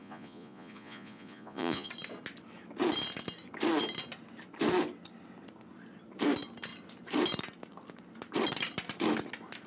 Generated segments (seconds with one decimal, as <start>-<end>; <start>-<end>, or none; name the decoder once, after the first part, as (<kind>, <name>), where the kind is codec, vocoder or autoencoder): 0.0-1.9 (vocoder, Vocos)